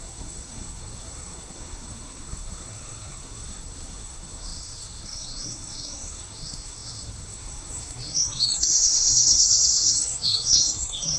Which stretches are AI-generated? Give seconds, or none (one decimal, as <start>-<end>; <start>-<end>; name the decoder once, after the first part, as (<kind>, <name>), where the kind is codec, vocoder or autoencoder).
0.0-11.2 (codec, SNAC)